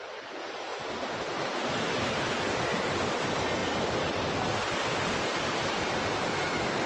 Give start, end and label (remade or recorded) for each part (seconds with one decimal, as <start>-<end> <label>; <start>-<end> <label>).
0.0-0.7 recorded; 0.7-1.3 remade; 1.3-6.9 recorded

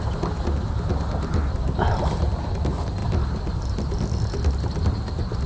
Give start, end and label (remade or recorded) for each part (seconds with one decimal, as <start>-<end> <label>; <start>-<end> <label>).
0.0-5.5 recorded

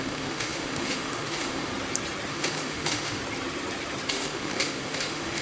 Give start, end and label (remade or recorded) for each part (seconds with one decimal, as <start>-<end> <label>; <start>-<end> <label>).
0.0-1.7 remade; 1.7-2.3 recorded; 2.3-3.2 remade; 3.2-4.1 recorded; 4.1-5.4 remade